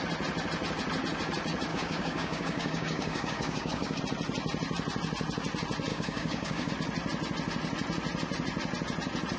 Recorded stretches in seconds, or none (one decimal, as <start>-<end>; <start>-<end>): 0.0-1.7; 4.0-5.9; 6.7-9.4